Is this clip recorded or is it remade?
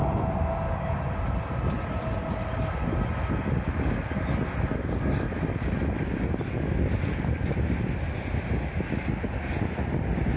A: recorded